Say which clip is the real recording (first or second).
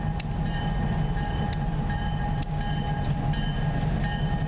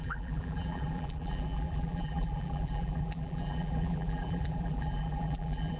first